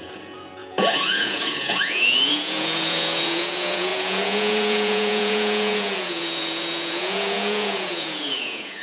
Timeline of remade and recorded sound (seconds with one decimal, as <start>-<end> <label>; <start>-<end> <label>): 0.0-8.8 remade